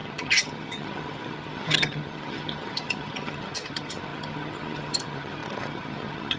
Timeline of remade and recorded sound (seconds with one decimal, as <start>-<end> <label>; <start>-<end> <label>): 0.0-6.4 remade